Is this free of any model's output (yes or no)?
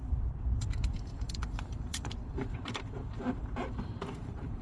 no